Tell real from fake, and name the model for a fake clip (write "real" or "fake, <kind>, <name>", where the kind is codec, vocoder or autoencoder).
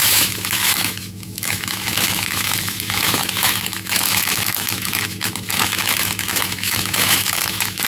fake, autoencoder, DAC-VAE